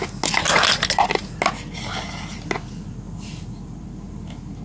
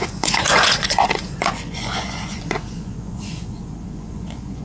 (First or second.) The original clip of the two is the first